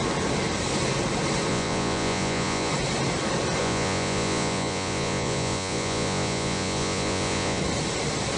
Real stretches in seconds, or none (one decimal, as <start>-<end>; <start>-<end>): 0.0-1.5; 2.7-3.6; 7.6-8.4